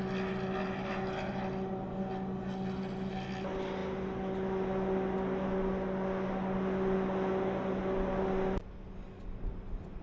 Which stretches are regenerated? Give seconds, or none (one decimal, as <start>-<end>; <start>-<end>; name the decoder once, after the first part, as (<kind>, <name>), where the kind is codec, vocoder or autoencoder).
none